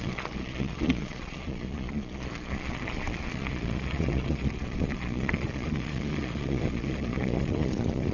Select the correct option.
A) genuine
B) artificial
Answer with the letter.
B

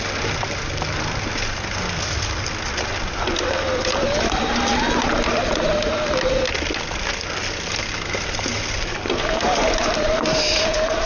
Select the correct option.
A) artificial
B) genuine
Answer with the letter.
B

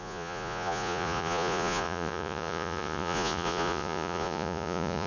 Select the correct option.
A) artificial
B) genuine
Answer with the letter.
A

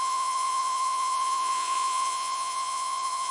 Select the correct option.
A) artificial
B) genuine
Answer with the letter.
A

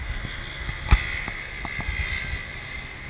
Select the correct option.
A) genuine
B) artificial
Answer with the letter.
A